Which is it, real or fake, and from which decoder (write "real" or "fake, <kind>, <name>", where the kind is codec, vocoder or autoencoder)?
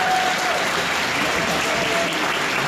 real